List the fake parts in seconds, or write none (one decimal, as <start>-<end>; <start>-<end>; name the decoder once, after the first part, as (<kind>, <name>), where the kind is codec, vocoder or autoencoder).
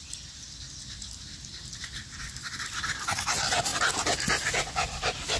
0.0-0.8 (vocoder, BigVGAN v2); 2.9-5.4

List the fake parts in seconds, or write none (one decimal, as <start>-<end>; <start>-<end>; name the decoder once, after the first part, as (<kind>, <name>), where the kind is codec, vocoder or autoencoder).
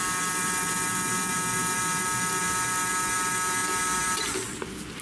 none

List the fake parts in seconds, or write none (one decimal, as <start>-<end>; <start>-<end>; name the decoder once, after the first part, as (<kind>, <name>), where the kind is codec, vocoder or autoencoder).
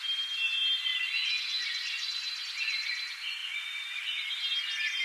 none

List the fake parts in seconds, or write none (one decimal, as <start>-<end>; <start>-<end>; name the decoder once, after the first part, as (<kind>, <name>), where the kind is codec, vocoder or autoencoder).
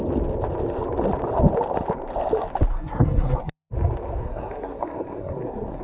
2.7-3.7 (codec, SNAC); 4.2-5.8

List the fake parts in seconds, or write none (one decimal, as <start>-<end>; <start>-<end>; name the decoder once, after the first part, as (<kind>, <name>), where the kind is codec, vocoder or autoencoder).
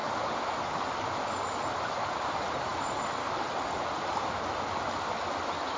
none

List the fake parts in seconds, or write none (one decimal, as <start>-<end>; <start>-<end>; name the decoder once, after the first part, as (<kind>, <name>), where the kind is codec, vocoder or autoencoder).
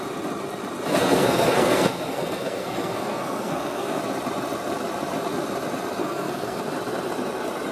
0.9-4.0 (codec, SNAC); 6.0-6.6